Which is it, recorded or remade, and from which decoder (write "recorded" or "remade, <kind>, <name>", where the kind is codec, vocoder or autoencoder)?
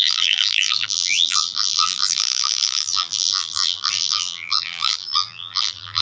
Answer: remade, vocoder, BigVGAN v2